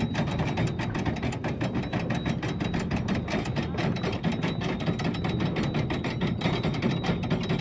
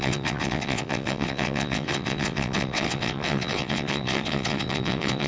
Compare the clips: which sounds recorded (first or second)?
first